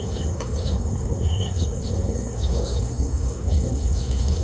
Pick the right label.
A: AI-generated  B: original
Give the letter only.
A